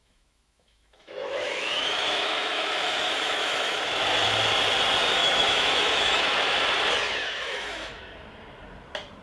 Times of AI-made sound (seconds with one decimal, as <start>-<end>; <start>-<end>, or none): 0.0-4.0; 5.2-6.5; 7.2-8.0